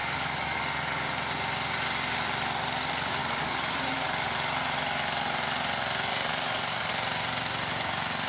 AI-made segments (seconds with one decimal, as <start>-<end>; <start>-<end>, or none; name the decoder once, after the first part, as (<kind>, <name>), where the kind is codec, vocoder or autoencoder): 0.0-0.7 (codec, DAC); 3.2-3.7; 6.1-6.9